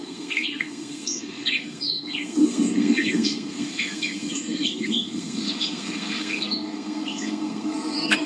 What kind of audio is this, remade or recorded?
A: remade